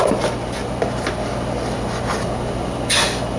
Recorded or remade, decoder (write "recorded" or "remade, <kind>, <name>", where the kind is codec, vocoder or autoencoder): recorded